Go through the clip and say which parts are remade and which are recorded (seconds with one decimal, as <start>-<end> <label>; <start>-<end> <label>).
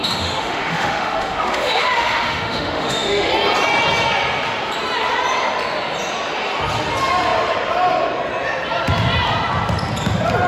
0.0-3.3 remade; 3.3-10.5 recorded